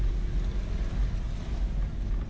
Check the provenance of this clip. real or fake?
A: real